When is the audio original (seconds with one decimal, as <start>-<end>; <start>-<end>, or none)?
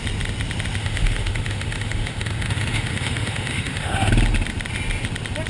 0.0-0.8; 4.1-5.5